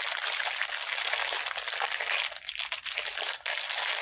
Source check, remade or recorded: recorded